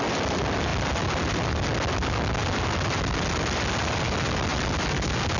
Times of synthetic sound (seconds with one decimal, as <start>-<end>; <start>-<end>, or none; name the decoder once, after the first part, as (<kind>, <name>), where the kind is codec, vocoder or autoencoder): 0.7-1.6 (vocoder, BigVGAN v2)